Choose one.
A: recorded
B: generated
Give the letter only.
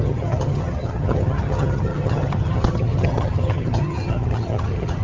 B